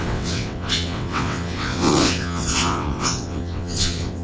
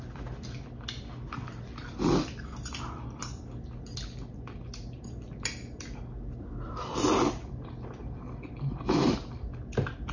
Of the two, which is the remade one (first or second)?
first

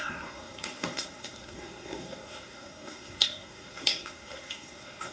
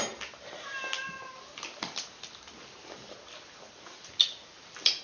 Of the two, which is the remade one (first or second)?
first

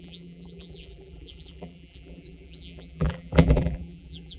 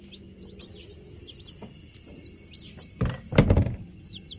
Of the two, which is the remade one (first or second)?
first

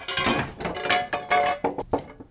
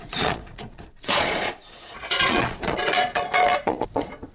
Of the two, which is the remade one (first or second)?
second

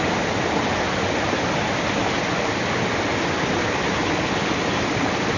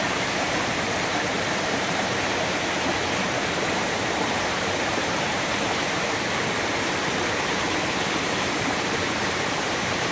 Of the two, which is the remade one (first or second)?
second